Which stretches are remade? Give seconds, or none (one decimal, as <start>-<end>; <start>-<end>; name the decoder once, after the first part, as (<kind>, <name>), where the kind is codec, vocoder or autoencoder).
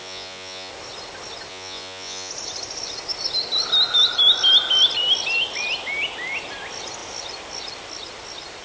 0.0-0.7 (vocoder, Vocos); 1.5-2.3